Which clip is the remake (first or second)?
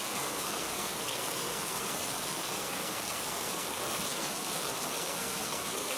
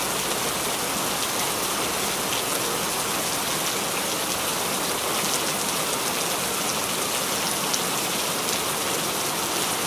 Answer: first